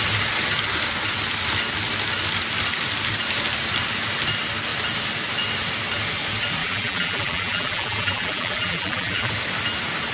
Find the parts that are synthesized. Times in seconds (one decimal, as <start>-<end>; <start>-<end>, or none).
6.6-9.3

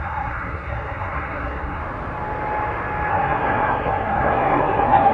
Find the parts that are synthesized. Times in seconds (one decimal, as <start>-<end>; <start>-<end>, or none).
0.0-1.8; 3.1-5.1